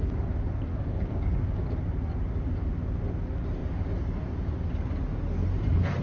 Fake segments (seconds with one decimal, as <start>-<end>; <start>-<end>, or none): 0.7-1.6